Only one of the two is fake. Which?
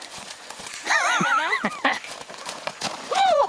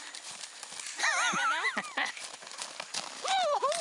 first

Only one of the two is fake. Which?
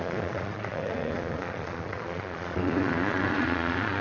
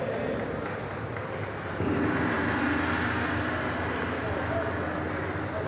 first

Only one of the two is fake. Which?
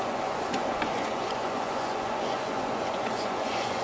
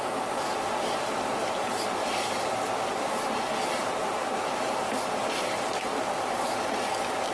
first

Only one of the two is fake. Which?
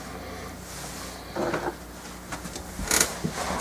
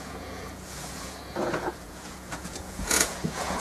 second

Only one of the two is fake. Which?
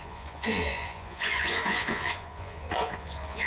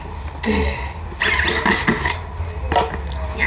first